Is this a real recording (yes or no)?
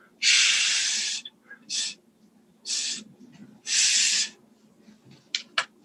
yes